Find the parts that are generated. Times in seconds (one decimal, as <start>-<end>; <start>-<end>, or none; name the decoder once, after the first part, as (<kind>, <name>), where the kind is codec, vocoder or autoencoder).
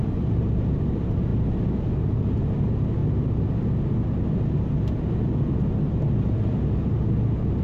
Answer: none